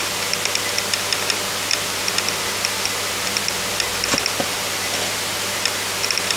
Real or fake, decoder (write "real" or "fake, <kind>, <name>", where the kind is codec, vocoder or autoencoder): real